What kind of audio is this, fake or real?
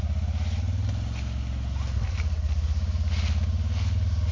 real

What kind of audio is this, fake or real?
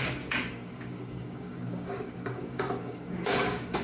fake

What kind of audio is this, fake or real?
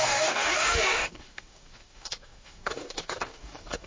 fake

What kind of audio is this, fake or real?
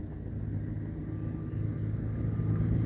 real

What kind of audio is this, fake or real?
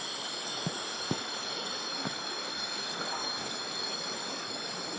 fake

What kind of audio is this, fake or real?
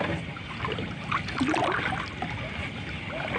real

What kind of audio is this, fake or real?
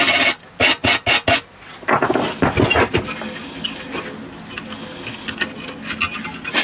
real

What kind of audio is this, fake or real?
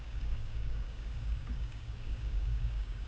fake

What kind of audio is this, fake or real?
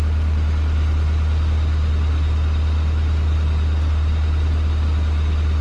real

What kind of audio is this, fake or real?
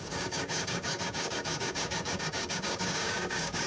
fake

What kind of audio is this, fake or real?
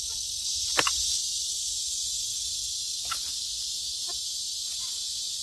real